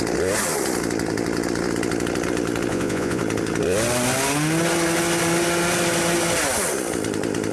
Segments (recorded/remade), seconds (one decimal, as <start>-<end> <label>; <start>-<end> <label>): 0.0-2.7 recorded; 2.7-3.2 remade; 3.2-7.5 recorded